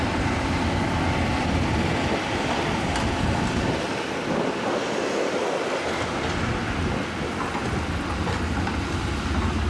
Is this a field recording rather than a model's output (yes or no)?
yes